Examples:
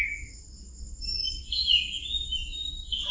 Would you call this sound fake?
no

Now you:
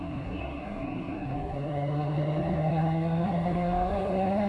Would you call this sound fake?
yes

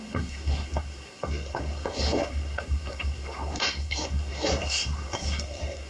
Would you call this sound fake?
yes